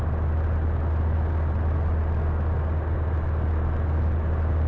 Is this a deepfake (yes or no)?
no